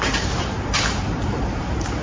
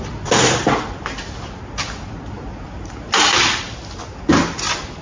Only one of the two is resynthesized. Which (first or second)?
first